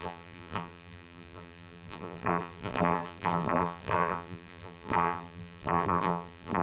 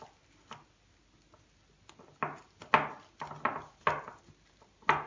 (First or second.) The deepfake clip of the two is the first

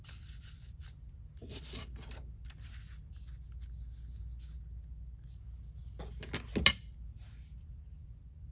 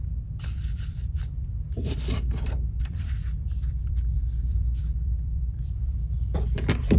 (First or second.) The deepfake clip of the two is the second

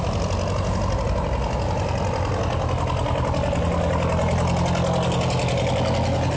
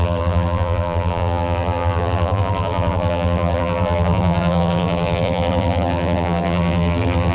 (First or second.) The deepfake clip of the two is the second